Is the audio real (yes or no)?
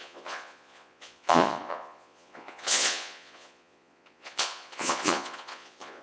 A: no